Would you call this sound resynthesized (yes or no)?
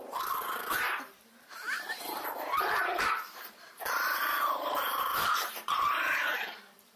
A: yes